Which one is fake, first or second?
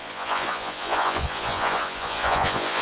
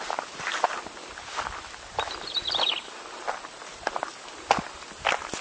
first